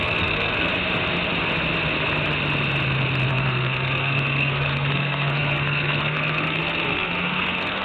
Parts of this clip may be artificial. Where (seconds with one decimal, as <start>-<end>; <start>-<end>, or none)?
0.0-0.7; 3.3-7.8